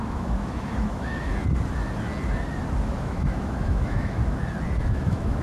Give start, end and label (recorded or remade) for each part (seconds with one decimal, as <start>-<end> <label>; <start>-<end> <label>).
0.0-1.3 remade; 1.3-3.0 recorded; 3.0-4.2 remade; 4.2-4.8 recorded; 4.8-5.4 remade